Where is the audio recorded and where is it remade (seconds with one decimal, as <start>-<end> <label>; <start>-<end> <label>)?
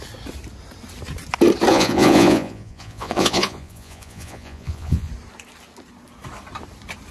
0.0-1.7 recorded; 1.7-5.1 remade; 5.1-7.1 recorded